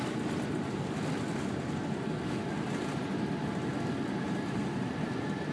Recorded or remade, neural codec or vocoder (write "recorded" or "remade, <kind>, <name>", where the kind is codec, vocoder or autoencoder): recorded